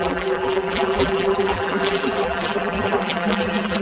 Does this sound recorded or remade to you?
remade